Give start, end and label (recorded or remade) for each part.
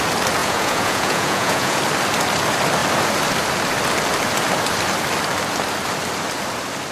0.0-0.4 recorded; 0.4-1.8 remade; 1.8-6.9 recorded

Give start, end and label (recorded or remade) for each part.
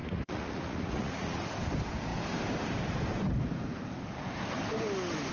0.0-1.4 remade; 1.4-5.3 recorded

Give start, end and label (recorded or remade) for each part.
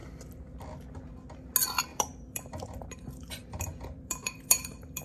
0.0-1.9 recorded; 1.9-5.0 remade